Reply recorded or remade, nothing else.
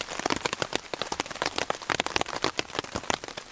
recorded